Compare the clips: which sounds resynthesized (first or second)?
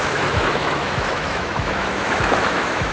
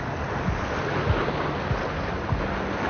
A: first